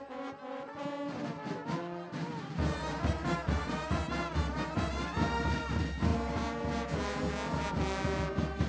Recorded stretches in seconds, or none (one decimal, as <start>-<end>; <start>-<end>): 0.0-8.7